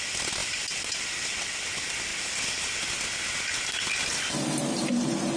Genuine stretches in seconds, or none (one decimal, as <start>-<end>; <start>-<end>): 0.0-5.4